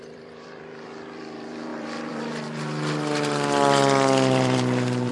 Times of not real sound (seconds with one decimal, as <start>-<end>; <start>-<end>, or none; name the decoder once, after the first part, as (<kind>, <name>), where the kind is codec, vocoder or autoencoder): 0.0-5.1 (vocoder, BigVGAN v2)